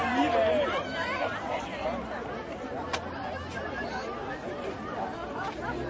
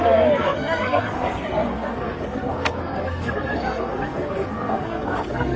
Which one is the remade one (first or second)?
second